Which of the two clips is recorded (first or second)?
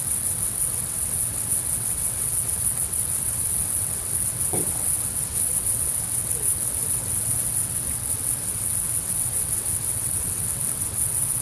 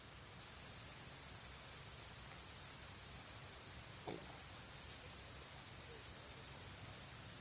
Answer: second